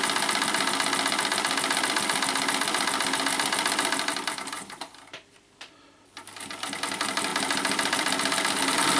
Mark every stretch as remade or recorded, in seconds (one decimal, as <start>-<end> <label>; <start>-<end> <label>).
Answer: 0.0-9.0 recorded